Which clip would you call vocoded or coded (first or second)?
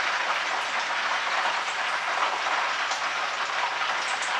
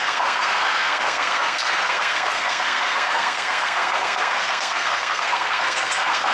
second